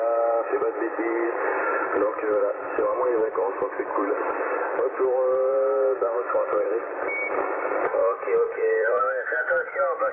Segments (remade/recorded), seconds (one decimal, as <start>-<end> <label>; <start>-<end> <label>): 0.0-3.2 recorded; 3.2-4.2 remade; 4.2-8.0 recorded; 8.0-9.0 remade; 9.0-10.1 recorded